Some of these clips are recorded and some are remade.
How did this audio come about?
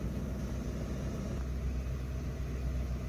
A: recorded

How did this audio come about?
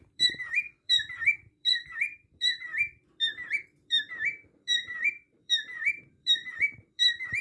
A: remade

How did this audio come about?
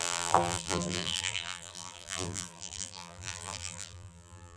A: remade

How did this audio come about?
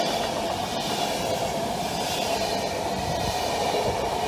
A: recorded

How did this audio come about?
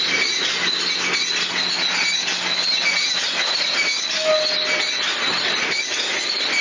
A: recorded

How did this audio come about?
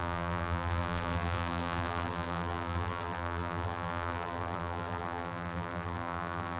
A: remade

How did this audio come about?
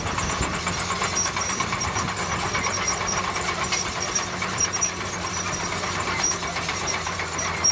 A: remade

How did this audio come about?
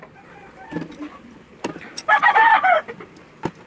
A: recorded